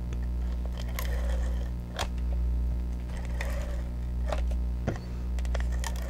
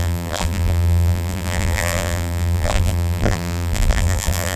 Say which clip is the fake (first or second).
second